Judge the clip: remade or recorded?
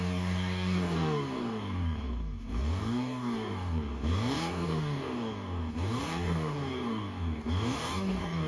remade